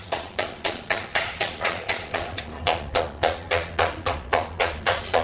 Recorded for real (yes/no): no